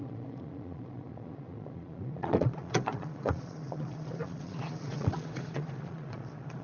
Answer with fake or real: fake